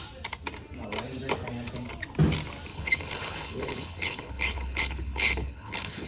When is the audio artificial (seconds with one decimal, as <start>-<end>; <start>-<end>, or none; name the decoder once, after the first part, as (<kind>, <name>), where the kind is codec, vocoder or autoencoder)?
2.7-6.1 (codec, HILCodec)